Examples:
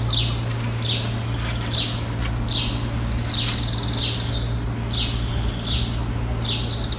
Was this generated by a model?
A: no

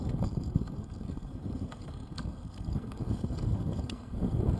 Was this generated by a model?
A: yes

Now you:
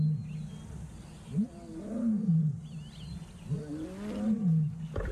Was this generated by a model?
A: no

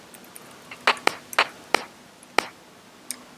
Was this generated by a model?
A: no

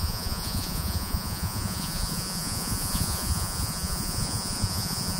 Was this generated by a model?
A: yes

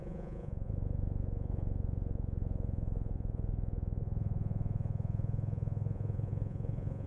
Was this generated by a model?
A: yes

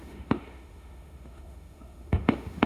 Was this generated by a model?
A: yes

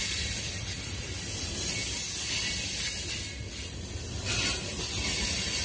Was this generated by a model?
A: no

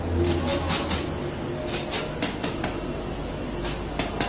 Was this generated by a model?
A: no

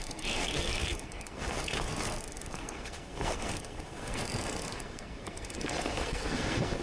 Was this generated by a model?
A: yes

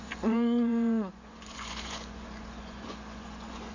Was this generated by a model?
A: yes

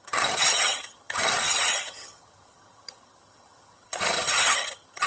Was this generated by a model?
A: yes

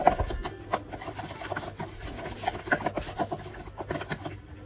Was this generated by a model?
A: no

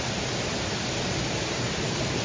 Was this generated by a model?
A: no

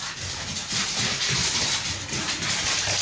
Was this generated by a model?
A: no